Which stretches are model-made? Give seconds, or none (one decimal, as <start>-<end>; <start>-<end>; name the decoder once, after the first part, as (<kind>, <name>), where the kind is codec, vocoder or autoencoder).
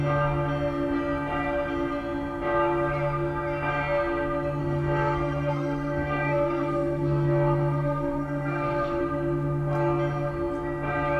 4.6-9.0 (codec, SNAC)